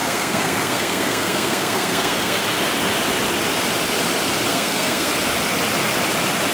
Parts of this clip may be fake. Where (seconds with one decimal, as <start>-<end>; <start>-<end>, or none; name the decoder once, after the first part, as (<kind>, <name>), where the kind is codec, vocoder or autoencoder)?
0.0-2.4 (codec, SNAC); 4.5-5.1